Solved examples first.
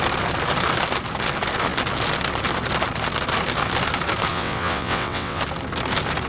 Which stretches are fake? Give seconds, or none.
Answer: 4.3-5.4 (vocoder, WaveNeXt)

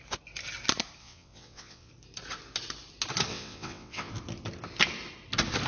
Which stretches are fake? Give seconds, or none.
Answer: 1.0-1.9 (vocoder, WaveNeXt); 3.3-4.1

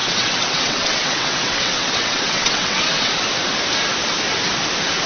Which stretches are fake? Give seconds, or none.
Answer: 0.0-3.1 (vocoder, WaveNeXt)

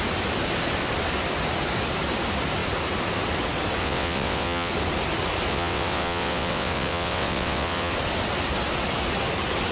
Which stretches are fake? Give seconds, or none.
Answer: 3.8-4.7 (vocoder, WaveNeXt); 5.5-7.9